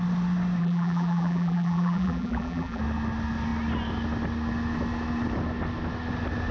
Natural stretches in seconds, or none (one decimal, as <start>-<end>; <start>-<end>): 0.0-0.6; 2.8-6.5